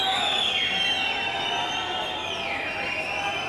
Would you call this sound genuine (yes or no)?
no